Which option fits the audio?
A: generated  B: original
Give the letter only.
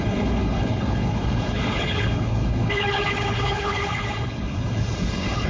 A